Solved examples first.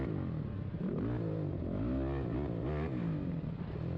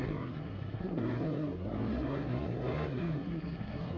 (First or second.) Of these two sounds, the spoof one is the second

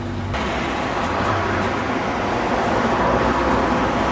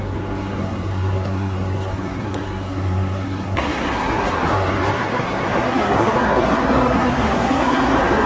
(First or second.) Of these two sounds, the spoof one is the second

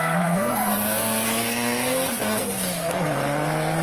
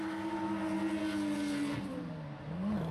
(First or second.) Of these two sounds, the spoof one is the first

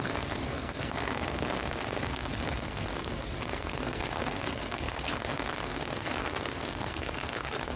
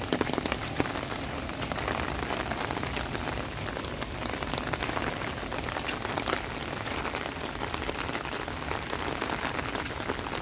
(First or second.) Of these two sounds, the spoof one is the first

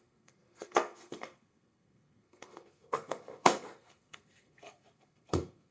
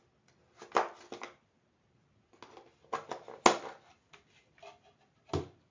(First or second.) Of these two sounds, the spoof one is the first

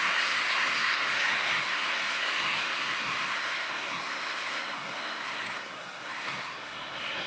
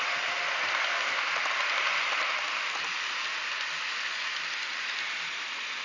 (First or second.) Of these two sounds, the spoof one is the first